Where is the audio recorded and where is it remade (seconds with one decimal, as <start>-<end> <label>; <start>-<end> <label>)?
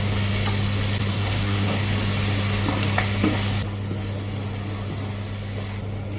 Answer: 0.0-1.1 recorded; 1.1-1.8 remade; 1.8-6.2 recorded